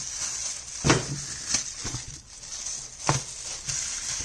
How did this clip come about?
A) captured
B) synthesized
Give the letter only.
A